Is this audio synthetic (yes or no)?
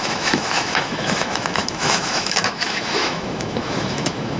yes